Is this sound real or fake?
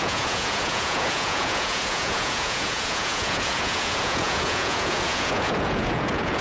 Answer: fake